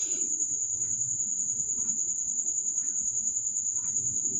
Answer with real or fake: real